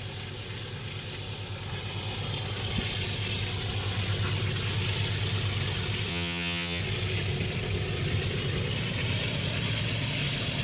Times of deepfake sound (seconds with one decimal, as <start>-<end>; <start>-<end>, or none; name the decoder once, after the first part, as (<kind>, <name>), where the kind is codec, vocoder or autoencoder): 6.1-6.8 (vocoder, HiFi-GAN)